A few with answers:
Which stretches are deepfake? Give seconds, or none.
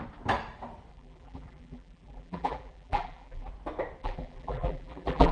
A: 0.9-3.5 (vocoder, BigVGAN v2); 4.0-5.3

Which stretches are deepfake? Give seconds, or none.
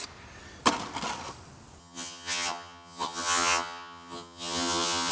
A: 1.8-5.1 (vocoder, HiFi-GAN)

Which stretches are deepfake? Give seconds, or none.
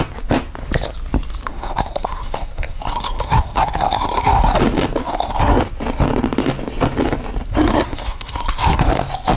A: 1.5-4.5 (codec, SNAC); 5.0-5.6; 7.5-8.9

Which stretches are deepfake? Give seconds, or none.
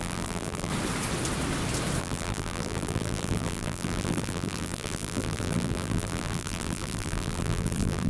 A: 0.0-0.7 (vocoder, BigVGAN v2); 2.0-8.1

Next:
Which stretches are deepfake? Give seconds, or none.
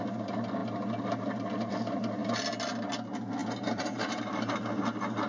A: 3.4-4.6 (vocoder, BigVGAN v2)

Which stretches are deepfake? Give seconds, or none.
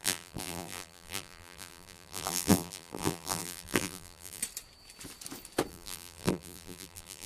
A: 0.0-4.4 (vocoder, BigVGAN v2); 5.7-7.3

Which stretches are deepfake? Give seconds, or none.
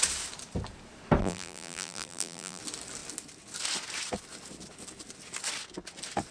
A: 1.2-2.6 (vocoder, BigVGAN v2)